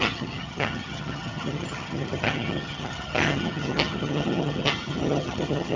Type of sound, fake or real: fake